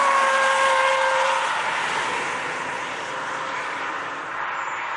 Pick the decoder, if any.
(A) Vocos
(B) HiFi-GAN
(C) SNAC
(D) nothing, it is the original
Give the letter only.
D